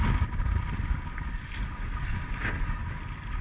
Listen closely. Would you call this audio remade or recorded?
recorded